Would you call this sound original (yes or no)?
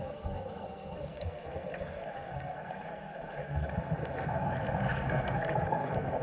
no